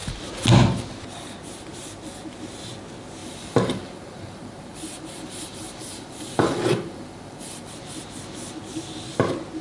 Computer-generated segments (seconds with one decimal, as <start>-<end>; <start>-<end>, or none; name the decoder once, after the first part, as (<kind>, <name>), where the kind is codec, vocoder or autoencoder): 3.2-7.7 (vocoder, BigVGAN v2)